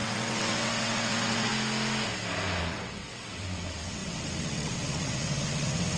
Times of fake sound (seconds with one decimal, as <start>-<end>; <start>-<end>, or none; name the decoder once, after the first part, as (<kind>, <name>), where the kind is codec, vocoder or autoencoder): 0.0-1.5 (vocoder, WaveNeXt); 2.6-6.0